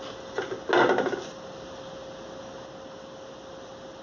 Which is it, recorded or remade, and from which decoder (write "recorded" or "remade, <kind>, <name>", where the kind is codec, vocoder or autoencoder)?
recorded